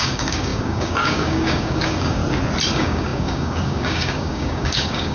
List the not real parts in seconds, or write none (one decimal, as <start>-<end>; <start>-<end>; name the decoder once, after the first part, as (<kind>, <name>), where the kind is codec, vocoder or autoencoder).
0.0-2.2 (codec, DAC); 2.7-5.1